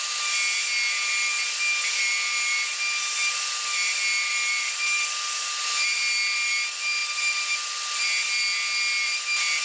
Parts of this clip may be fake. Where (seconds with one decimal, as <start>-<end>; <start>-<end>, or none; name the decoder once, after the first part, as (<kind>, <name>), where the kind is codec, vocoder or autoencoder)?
none